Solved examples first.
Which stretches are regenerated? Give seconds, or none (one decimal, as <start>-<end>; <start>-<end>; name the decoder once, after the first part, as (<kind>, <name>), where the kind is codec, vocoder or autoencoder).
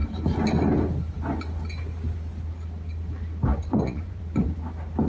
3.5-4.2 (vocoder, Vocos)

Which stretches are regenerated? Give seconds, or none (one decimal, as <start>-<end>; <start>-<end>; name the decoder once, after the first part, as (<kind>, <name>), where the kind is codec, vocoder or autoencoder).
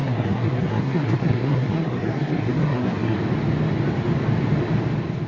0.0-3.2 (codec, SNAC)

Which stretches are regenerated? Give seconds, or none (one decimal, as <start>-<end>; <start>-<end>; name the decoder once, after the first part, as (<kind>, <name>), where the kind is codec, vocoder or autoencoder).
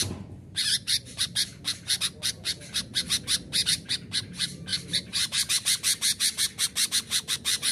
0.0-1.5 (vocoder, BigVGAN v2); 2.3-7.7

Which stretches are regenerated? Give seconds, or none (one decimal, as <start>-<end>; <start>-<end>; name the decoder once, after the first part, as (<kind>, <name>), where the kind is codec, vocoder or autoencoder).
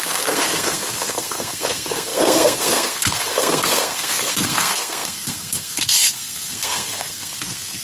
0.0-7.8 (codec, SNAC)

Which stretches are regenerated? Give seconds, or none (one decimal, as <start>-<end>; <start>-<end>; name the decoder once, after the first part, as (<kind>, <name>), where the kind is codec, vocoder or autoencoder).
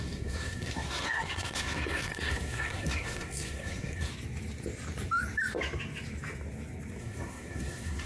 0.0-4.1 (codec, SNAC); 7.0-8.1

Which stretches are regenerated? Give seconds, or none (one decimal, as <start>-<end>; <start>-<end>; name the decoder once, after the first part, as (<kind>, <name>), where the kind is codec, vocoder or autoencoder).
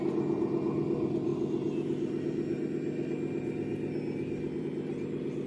none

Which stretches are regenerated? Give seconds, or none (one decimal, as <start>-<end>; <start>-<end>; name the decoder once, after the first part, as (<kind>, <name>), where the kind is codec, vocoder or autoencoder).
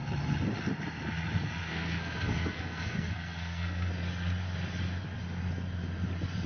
1.6-3.9 (codec, SNAC)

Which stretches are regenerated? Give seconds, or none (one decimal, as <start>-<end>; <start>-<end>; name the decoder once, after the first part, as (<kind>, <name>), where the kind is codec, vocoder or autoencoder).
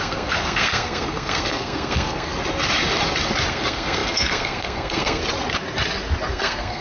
0.0-2.3 (codec, SNAC); 3.5-5.2; 6.3-6.8